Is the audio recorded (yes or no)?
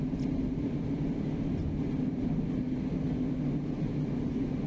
yes